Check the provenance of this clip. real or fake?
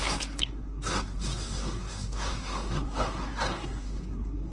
fake